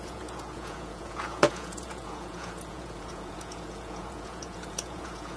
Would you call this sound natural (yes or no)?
no